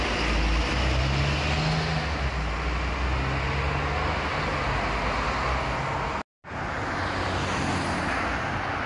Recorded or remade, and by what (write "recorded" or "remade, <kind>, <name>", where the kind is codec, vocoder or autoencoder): recorded